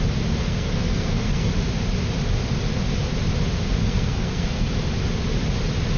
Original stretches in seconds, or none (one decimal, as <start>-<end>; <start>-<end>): 0.0-0.4; 1.5-3.8; 4.7-6.0